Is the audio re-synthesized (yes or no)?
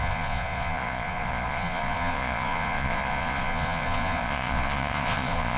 yes